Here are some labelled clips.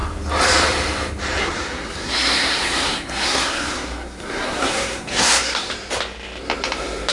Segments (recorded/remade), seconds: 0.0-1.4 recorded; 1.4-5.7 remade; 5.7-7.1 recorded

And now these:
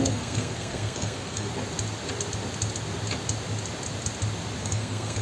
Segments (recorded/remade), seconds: 0.0-1.5 remade; 1.5-4.6 recorded; 4.6-5.2 remade